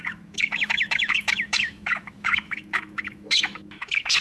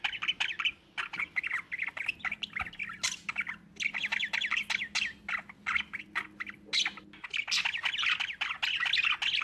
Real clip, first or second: second